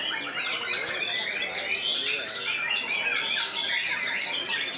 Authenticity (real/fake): real